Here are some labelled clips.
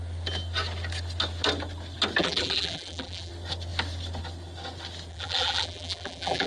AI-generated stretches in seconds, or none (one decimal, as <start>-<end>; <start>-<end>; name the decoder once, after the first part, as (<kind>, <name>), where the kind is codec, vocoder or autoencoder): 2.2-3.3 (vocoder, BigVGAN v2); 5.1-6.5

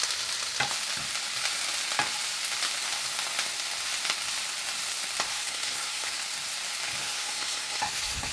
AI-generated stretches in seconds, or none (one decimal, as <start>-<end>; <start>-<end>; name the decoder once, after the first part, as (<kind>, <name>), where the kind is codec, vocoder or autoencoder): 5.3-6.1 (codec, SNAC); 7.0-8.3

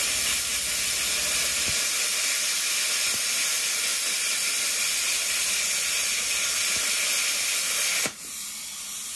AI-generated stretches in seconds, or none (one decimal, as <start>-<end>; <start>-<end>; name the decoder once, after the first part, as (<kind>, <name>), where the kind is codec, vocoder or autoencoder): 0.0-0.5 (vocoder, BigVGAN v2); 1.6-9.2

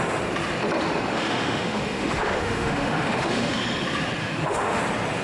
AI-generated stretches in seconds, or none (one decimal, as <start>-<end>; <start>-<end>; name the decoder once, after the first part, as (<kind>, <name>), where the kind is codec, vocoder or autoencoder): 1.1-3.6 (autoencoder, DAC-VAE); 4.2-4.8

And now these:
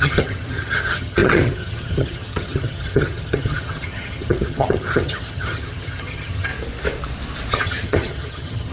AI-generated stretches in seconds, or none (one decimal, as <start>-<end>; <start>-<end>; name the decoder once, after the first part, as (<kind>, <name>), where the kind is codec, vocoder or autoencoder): 0.0-6.5 (vocoder, HiFi-GAN); 7.5-8.7

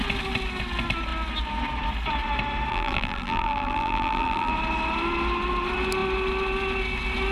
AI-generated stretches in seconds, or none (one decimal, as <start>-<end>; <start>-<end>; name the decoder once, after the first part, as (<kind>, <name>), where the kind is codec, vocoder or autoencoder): 2.7-4.5 (vocoder, BigVGAN v2)